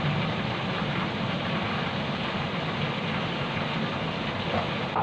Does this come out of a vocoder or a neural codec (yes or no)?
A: no